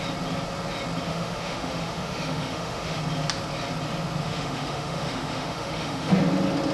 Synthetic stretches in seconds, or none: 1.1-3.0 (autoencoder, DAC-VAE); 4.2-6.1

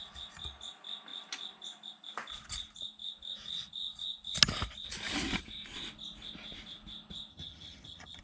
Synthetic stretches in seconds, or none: 7.3-8.2 (vocoder, HiFi-GAN)